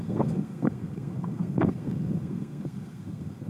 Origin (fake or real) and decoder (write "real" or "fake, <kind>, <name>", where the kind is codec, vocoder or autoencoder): fake, codec, SNAC